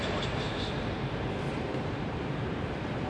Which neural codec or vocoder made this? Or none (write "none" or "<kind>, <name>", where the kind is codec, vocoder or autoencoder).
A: vocoder, BigVGAN v2